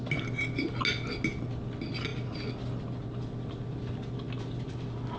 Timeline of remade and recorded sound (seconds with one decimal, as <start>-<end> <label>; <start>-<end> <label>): 0.0-5.2 recorded